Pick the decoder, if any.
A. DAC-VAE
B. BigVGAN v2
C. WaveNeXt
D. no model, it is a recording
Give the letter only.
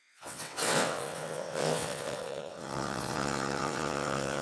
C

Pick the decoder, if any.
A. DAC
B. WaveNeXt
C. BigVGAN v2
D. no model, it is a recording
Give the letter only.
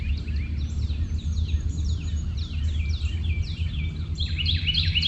D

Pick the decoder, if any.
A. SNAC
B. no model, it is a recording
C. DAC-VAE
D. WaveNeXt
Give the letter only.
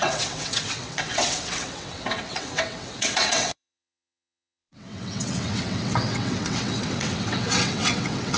D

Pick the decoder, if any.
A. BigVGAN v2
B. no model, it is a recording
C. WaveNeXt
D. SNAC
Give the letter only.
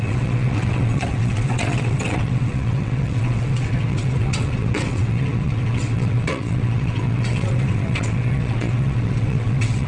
C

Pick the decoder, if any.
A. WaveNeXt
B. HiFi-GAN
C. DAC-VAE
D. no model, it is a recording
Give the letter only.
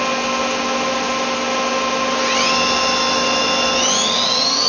D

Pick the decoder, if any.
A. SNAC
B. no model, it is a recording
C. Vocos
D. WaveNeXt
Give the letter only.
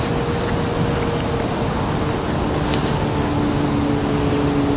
B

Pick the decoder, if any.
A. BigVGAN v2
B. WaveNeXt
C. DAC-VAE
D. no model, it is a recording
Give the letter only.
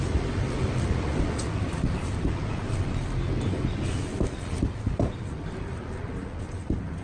D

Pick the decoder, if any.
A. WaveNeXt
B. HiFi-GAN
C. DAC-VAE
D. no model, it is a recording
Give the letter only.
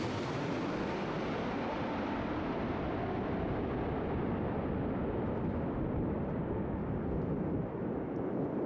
D